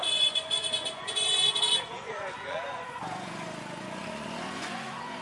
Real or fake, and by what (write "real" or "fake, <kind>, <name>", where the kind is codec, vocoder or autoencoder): fake, vocoder, Vocos